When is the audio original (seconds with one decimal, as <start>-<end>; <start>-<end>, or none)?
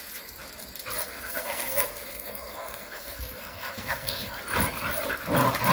0.0-1.0; 4.4-5.7